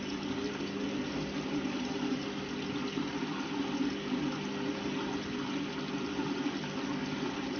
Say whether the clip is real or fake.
real